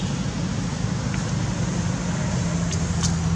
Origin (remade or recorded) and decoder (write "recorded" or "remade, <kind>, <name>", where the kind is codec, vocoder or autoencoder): recorded